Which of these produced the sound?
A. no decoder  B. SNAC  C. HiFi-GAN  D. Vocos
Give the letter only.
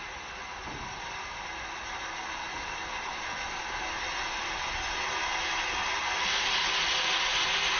A